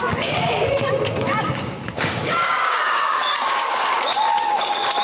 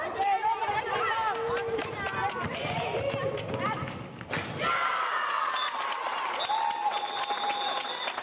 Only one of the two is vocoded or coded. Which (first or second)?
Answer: first